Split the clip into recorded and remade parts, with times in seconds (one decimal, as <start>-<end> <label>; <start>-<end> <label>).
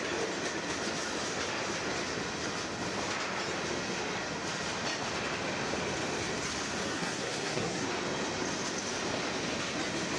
0.0-6.8 recorded; 6.8-7.9 remade; 7.9-10.2 recorded